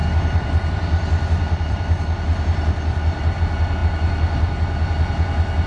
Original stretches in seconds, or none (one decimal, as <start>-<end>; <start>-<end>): 3.4-5.7